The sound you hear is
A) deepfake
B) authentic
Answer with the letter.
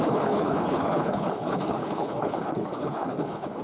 A